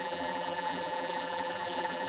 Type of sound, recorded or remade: remade